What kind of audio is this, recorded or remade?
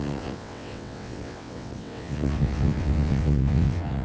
remade